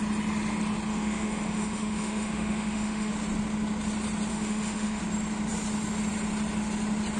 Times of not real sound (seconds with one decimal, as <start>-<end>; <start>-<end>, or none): 0.9-3.1; 4.3-5.0